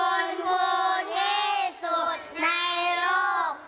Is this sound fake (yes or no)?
no